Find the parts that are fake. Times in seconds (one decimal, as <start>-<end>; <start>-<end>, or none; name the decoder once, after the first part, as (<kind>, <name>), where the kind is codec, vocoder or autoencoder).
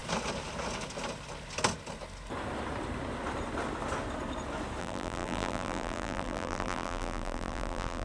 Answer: 4.8-8.0 (vocoder, BigVGAN v2)